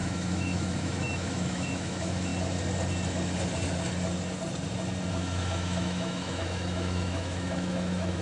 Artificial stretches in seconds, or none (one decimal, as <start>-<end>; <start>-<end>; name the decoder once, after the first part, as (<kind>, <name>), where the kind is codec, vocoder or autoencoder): 0.0-2.3 (autoencoder, DAC-VAE); 5.1-8.2